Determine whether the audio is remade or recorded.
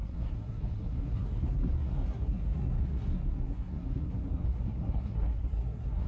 remade